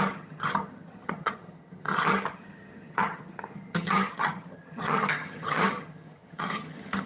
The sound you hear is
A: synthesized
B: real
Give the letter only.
A